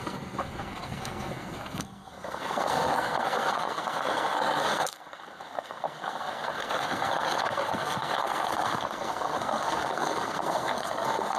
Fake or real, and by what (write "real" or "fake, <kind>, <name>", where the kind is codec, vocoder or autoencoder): fake, codec, SNAC